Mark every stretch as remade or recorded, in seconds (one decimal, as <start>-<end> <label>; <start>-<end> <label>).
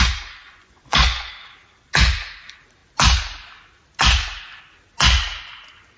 0.0-0.4 recorded; 0.4-1.3 remade; 1.3-6.0 recorded